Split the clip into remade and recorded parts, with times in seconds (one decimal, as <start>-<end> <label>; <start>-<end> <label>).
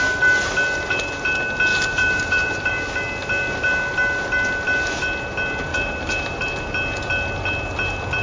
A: 0.0-1.7 recorded; 1.7-2.7 remade; 2.7-5.7 recorded; 5.7-6.4 remade; 6.4-8.2 recorded